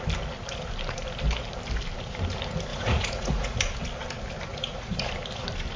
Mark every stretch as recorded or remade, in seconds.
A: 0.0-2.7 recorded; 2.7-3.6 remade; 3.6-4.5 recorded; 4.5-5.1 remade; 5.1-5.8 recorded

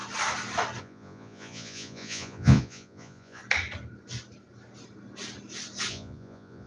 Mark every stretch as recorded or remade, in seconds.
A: 0.0-0.8 recorded; 0.8-3.4 remade; 3.4-5.9 recorded; 5.9-6.7 remade

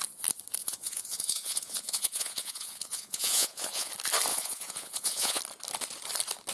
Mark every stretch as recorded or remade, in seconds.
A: 0.0-0.6 recorded; 0.6-3.9 remade; 3.9-4.3 recorded; 4.3-5.4 remade; 5.4-6.5 recorded

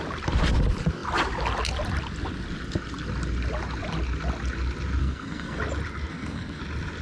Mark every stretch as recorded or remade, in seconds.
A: 0.0-5.0 recorded; 5.0-5.6 remade; 5.6-6.1 recorded; 6.1-6.6 remade; 6.6-7.0 recorded

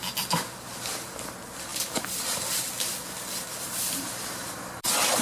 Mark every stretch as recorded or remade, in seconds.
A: 0.0-5.2 recorded

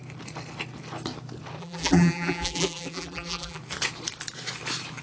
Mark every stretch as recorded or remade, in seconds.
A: 0.0-1.6 recorded; 1.6-3.6 remade; 3.6-5.0 recorded

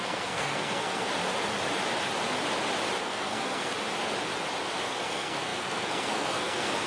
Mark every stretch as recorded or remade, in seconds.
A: 0.0-1.1 remade; 1.1-3.0 recorded; 3.0-3.7 remade; 3.7-4.8 recorded; 4.8-6.9 remade